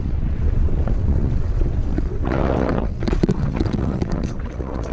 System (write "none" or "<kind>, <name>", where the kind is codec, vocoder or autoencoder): vocoder, WaveNeXt